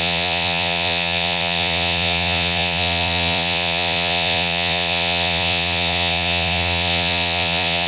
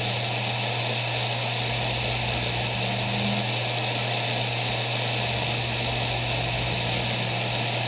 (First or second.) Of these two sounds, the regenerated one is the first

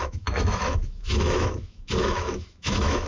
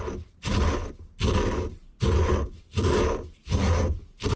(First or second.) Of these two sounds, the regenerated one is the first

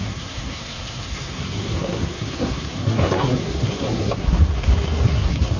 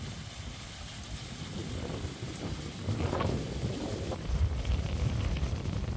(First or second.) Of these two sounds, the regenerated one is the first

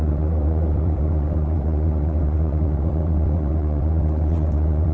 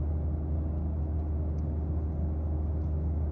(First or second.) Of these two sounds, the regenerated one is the first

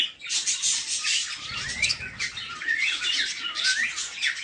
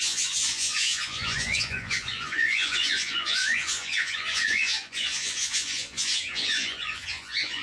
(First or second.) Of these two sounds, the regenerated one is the second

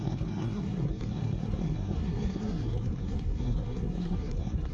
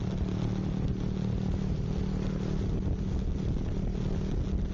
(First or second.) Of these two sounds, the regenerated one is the first